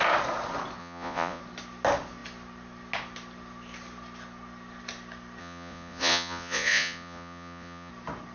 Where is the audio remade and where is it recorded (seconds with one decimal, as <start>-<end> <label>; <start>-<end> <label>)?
0.0-0.8 recorded; 0.8-1.4 remade; 1.4-5.4 recorded; 5.4-7.9 remade; 7.9-8.3 recorded

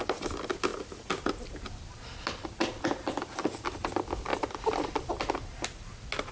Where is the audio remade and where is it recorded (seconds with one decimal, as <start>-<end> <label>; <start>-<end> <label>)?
0.0-4.3 recorded; 4.3-5.1 remade; 5.1-6.3 recorded

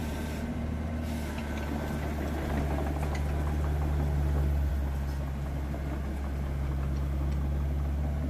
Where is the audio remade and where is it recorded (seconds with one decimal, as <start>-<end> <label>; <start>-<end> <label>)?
0.0-0.9 remade; 0.9-8.3 recorded

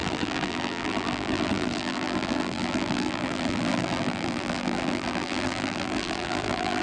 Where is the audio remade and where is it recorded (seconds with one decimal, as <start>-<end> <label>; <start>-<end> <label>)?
0.0-6.8 remade

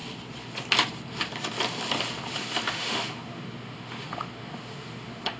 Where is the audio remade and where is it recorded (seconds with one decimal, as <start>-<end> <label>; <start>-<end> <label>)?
0.0-2.4 recorded; 2.4-5.4 remade

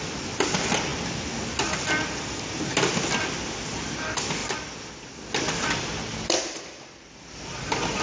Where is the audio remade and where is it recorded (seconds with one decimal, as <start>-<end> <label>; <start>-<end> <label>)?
0.0-8.0 recorded

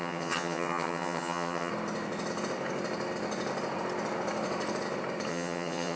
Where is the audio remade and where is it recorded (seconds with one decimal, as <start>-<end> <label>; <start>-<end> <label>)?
0.0-1.7 remade; 1.7-5.3 recorded; 5.3-6.0 remade

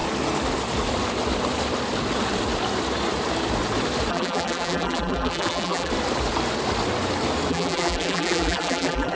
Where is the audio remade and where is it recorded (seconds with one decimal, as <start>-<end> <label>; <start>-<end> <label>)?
0.0-4.1 recorded; 4.1-5.9 remade; 5.9-7.5 recorded; 7.5-9.2 remade